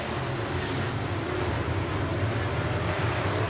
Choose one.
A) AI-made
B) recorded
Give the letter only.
B